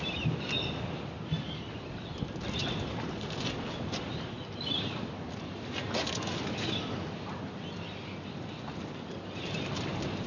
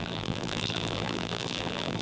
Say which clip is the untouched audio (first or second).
first